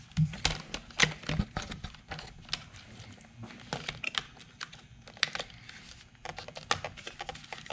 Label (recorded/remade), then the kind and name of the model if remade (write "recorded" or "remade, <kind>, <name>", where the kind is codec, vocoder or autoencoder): recorded